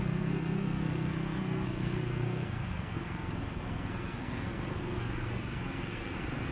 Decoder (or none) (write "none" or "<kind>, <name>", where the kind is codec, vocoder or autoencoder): codec, SNAC